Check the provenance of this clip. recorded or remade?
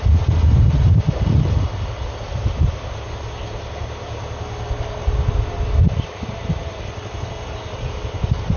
recorded